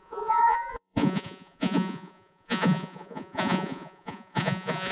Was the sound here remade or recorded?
remade